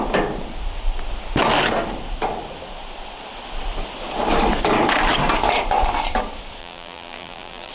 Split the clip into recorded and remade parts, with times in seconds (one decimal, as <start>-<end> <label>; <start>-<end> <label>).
0.0-6.6 recorded; 6.6-7.7 remade